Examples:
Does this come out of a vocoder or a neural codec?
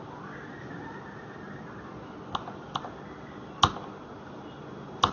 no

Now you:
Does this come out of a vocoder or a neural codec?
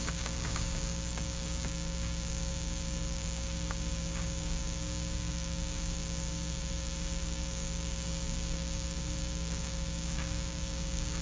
yes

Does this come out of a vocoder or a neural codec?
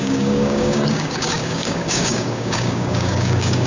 yes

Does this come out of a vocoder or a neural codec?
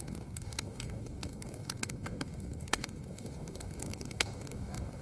yes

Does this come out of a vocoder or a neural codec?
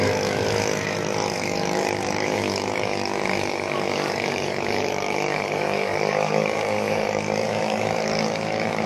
yes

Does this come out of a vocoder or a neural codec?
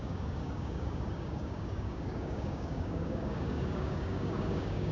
yes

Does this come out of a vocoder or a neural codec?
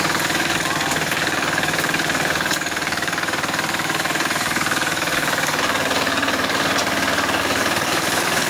yes